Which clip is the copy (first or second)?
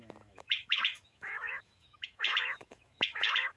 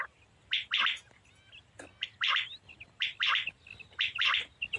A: first